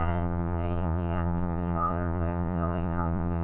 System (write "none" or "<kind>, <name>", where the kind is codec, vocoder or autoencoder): vocoder, Vocos